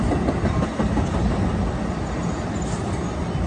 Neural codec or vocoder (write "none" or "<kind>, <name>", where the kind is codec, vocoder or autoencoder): none